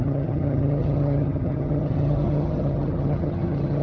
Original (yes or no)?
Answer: no